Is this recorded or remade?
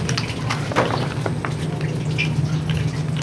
recorded